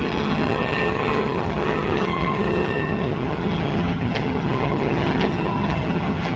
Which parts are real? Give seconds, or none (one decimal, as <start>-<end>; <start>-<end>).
none